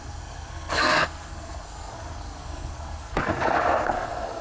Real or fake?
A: fake